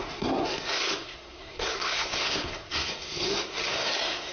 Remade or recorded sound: remade